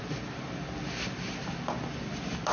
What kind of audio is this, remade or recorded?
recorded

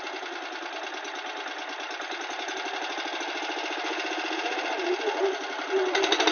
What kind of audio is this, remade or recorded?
recorded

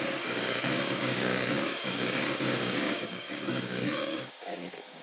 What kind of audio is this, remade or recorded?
remade